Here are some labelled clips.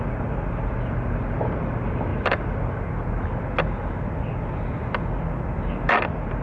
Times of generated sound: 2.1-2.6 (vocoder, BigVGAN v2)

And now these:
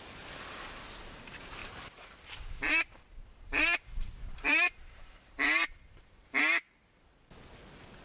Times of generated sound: 1.6-6.4 (vocoder, BigVGAN v2)

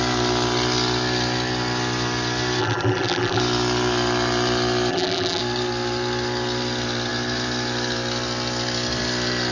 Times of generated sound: 2.6-3.4 (vocoder, BigVGAN v2); 4.9-5.4

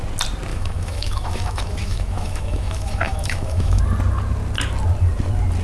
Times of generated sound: 0.5-3.8 (autoencoder, DAC-VAE)